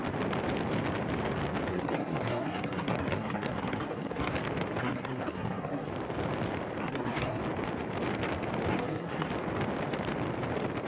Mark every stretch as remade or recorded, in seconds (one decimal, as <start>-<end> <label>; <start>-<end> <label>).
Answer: 0.0-1.7 recorded; 1.7-4.3 remade; 4.3-4.8 recorded; 4.8-5.9 remade; 5.9-6.8 recorded; 6.8-7.4 remade; 7.4-8.7 recorded; 8.7-9.3 remade; 9.3-10.9 recorded